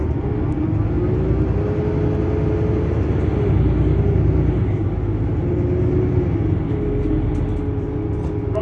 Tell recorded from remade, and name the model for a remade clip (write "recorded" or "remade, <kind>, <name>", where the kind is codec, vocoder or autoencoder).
recorded